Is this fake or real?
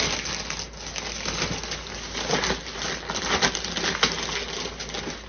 real